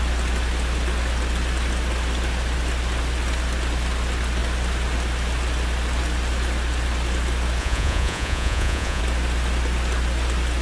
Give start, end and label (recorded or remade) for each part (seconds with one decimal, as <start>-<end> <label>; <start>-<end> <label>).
0.0-7.6 recorded; 7.6-9.0 remade; 9.0-10.6 recorded